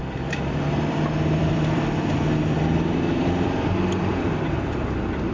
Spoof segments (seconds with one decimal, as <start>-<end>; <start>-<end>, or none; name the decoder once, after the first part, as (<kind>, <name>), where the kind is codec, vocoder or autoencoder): 0.0-5.3 (vocoder, BigVGAN v2)